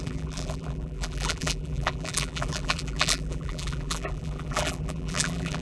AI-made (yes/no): yes